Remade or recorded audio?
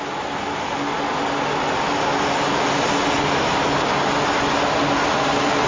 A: recorded